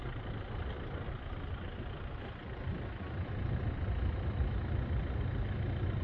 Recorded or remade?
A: recorded